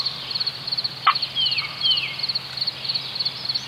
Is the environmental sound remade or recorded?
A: recorded